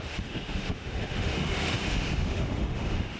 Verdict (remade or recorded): remade